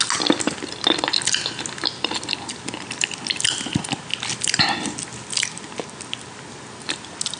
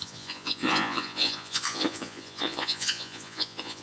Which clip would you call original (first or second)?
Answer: first